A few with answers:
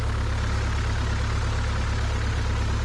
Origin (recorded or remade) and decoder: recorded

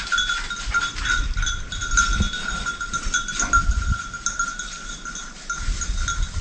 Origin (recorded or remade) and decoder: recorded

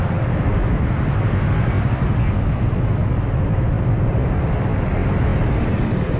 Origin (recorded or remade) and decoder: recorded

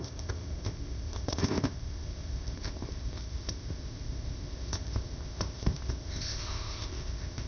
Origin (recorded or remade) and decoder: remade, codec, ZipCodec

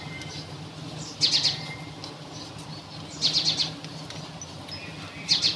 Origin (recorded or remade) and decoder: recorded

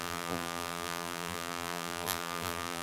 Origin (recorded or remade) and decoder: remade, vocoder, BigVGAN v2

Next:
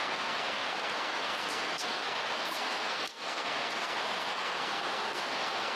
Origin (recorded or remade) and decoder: remade, codec, SNAC